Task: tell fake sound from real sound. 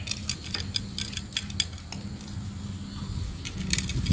real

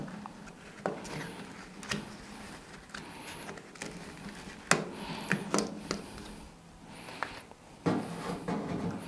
real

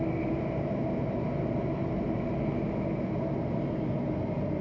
real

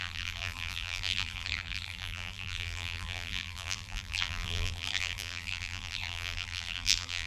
fake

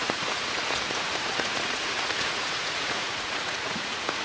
fake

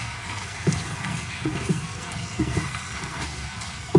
fake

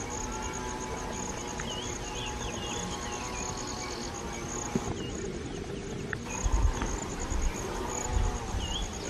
real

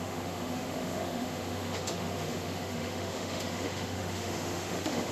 fake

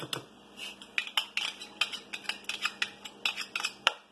real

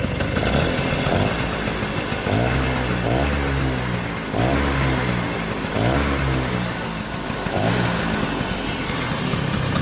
real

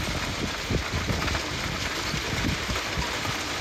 real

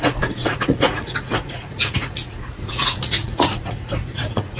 fake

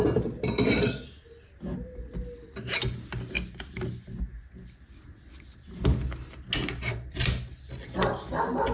real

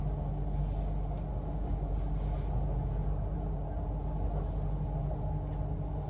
real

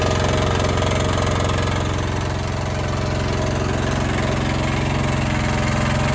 real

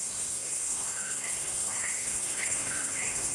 fake